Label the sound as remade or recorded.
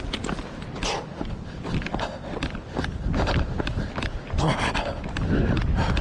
recorded